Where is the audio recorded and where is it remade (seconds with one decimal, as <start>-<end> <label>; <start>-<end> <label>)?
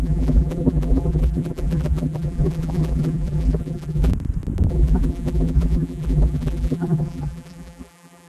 0.0-4.1 remade; 4.1-4.7 recorded; 4.7-8.3 remade